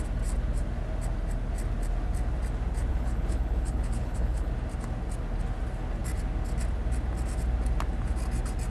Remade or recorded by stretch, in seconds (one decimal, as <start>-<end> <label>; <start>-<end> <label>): 0.0-2.9 recorded; 2.9-4.5 remade; 4.5-8.7 recorded